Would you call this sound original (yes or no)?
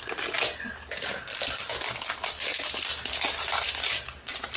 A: yes